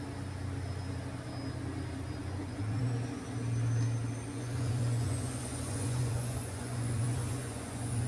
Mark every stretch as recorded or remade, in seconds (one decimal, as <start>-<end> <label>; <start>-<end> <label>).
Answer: 0.0-2.2 recorded; 2.2-2.8 remade; 2.8-4.3 recorded; 4.3-8.1 remade